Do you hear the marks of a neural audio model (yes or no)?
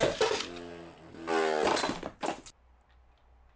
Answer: no